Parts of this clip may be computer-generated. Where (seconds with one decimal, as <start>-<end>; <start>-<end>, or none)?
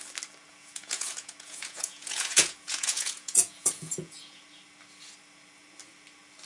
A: 0.5-4.4